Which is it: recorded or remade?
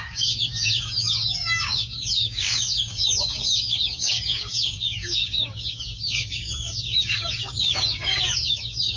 remade